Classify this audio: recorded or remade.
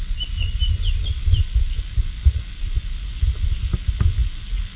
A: recorded